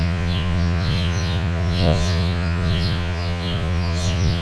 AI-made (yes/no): yes